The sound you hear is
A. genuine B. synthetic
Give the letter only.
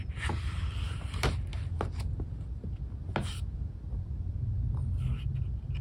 A